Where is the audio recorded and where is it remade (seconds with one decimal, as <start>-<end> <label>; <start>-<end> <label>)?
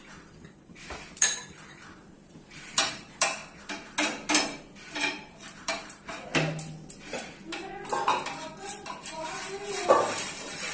0.0-3.4 remade; 3.4-4.6 recorded; 4.6-6.3 remade; 6.3-9.9 recorded; 9.9-10.7 remade